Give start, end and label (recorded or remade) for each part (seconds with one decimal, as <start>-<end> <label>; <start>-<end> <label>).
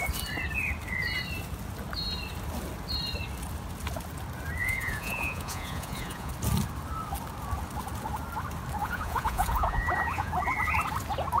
0.0-4.6 recorded; 4.6-6.3 remade; 6.3-8.8 recorded; 8.8-10.3 remade; 10.3-11.4 recorded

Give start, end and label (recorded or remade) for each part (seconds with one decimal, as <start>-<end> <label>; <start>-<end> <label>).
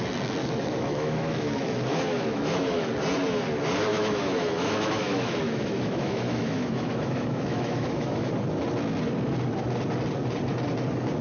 0.0-0.4 recorded; 0.4-2.9 remade; 2.9-3.9 recorded; 3.9-8.3 remade; 8.3-11.2 recorded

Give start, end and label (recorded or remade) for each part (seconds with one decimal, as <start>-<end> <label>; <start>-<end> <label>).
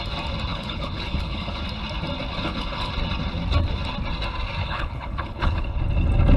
0.0-0.5 recorded; 0.5-1.6 remade; 1.6-2.3 recorded; 2.3-2.9 remade; 2.9-4.6 recorded; 4.6-5.8 remade; 5.8-6.4 recorded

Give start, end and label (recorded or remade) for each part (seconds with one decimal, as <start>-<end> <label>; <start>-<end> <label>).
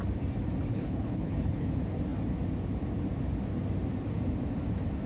0.0-0.7 recorded; 0.7-1.7 remade; 1.7-5.1 recorded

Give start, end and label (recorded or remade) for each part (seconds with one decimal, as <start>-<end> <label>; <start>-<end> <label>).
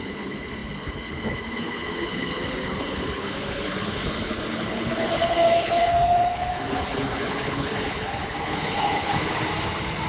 0.0-9.5 remade; 9.5-10.1 recorded